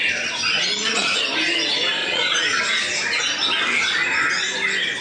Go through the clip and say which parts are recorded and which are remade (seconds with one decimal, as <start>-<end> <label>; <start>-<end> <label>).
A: 0.0-0.6 recorded; 0.6-1.2 remade; 1.2-2.0 recorded; 2.0-2.6 remade; 2.6-5.0 recorded